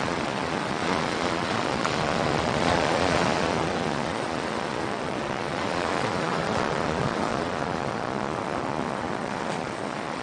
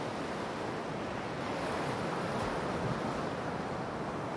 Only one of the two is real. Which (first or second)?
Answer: second